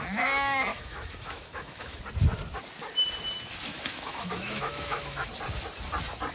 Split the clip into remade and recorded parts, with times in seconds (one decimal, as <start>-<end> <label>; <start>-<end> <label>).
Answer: 0.0-0.7 recorded; 0.7-2.0 remade; 2.0-3.7 recorded; 3.7-5.3 remade; 5.3-6.3 recorded